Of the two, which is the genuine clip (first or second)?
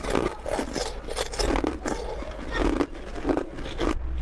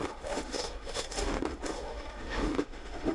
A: first